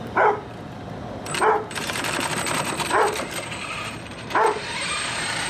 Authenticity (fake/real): fake